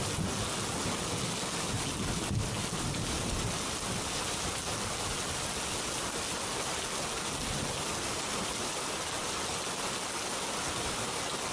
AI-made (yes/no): no